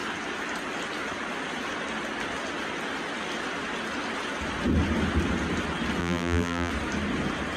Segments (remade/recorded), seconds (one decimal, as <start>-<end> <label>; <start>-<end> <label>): 0.0-6.0 recorded; 6.0-6.7 remade; 6.7-7.6 recorded